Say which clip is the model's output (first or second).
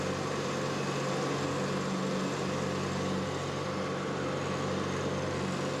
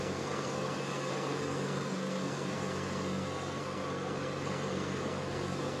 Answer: second